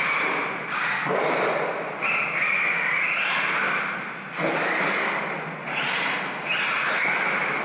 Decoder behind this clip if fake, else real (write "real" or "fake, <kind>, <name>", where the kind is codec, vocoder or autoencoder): real